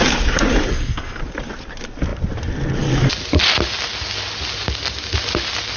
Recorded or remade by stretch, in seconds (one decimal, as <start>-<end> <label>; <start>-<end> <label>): 0.0-0.7 recorded; 0.7-1.2 remade; 1.2-5.8 recorded